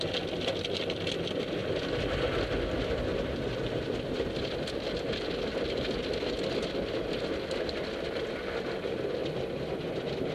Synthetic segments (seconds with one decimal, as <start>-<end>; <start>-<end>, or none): 1.6-2.3; 3.1-4.1